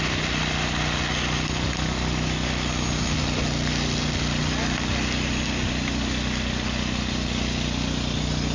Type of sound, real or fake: real